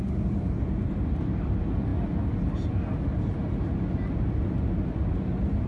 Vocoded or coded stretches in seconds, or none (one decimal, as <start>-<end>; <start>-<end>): none